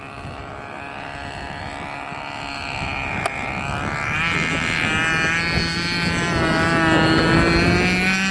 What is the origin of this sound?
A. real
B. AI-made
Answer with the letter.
A